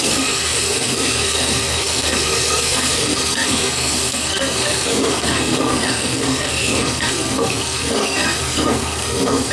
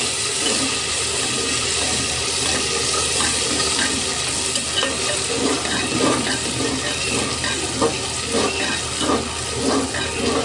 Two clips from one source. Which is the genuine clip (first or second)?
second